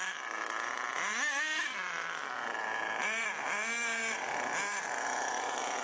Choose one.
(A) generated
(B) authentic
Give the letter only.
B